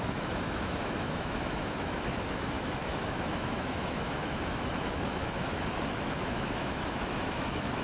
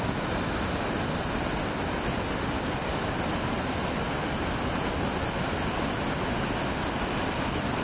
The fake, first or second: first